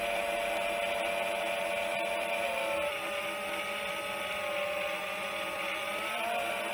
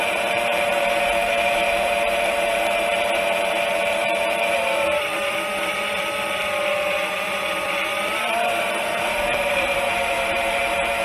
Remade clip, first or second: second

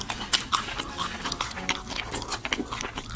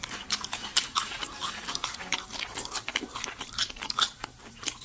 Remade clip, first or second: second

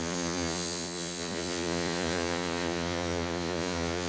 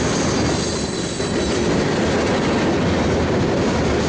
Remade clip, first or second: first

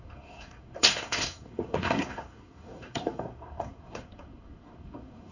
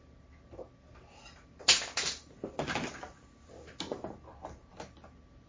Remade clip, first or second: first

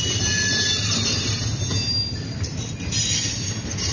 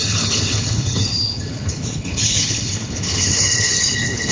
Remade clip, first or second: second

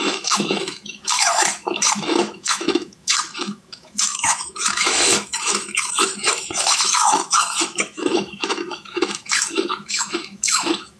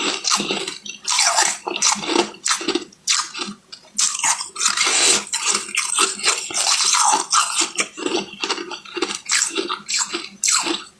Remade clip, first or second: first